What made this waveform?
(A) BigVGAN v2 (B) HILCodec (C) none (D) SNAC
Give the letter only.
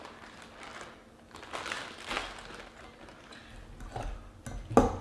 C